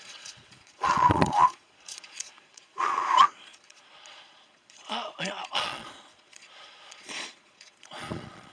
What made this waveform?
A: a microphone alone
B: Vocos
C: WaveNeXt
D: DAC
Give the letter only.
B